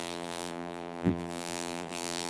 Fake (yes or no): yes